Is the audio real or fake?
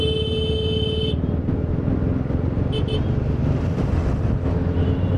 real